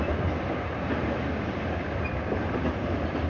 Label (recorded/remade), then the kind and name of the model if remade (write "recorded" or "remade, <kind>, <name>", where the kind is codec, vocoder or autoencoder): recorded